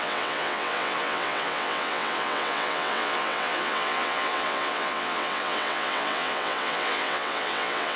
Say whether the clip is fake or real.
fake